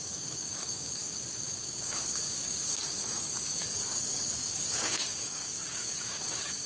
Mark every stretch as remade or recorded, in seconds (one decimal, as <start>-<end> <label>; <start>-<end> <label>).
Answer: 0.0-6.7 remade

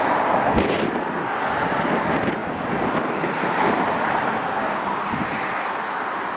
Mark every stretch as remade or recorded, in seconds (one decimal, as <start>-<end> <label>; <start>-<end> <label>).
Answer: 0.0-6.4 recorded

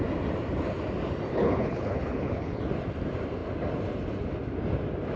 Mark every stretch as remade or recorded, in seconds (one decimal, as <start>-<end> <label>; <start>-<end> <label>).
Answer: 0.0-1.3 recorded; 1.3-2.6 remade; 2.6-5.2 recorded

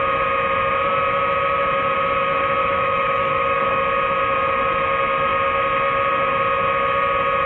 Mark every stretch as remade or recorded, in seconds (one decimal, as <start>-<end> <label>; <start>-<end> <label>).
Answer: 0.0-2.6 recorded; 2.6-3.8 remade; 3.8-7.5 recorded

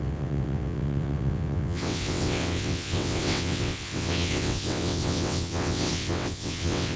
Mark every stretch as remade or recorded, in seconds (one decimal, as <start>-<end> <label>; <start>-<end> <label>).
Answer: 0.0-7.0 remade

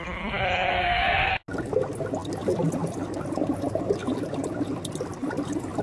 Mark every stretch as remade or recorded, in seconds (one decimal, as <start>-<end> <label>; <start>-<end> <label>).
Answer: 0.0-0.7 recorded; 0.7-1.3 remade; 1.3-5.8 recorded

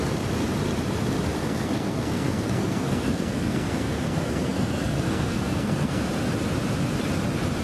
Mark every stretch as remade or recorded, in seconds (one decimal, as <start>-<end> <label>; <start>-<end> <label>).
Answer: 0.0-1.4 recorded; 1.4-6.0 remade; 6.0-7.6 recorded

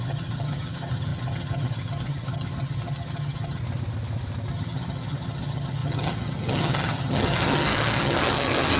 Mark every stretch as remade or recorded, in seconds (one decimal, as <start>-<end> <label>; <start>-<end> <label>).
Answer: 0.0-3.6 remade; 3.6-4.5 recorded; 4.5-8.8 remade